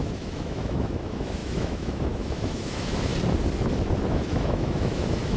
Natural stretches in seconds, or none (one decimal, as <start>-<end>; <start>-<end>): 3.1-4.1